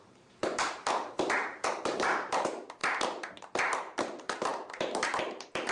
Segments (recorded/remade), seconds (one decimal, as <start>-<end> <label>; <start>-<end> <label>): 0.0-5.7 remade